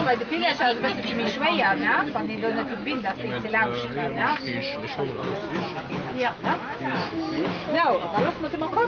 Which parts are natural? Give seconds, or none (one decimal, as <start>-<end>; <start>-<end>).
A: 0.0-5.4